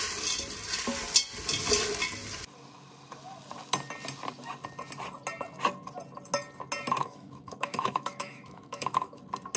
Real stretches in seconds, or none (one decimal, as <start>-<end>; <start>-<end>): 0.0-7.0; 9.2-9.6